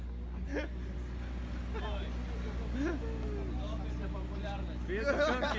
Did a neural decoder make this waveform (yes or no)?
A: no